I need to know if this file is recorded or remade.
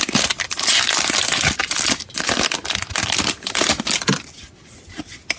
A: recorded